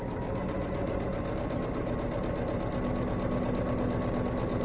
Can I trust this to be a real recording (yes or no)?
yes